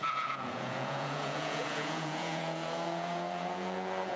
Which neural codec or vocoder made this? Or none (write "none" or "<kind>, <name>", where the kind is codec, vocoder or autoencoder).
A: vocoder, Vocos